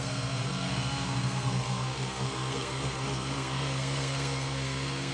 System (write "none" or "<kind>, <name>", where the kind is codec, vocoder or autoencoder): codec, SNAC